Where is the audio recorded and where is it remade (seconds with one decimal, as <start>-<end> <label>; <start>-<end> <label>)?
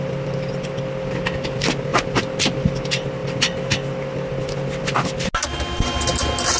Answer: 0.0-6.6 recorded